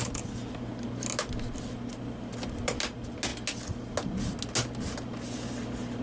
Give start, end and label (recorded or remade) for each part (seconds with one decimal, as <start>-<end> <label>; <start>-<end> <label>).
0.0-6.0 recorded